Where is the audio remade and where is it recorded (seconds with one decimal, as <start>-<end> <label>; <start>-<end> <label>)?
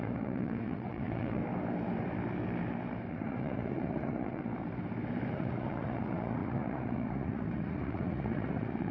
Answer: 0.0-1.4 remade; 1.4-3.1 recorded; 3.1-4.5 remade; 4.5-5.3 recorded; 5.3-8.9 remade